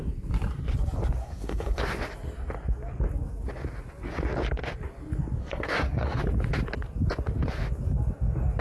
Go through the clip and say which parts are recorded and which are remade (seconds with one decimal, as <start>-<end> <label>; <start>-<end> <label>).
0.0-1.2 recorded; 1.2-1.8 remade; 1.8-5.4 recorded; 5.4-6.2 remade; 6.2-8.6 recorded